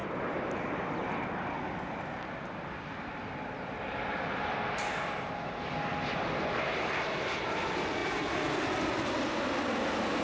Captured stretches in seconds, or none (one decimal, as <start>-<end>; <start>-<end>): 0.0-10.2